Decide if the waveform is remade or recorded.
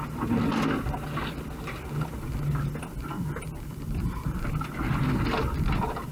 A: recorded